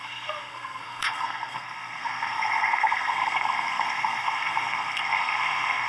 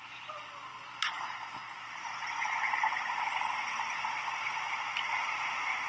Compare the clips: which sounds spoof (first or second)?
first